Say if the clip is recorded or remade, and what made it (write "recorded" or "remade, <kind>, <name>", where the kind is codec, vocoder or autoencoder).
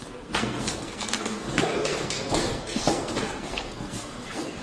remade, codec, SNAC